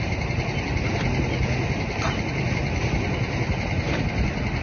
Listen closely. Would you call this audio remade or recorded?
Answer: recorded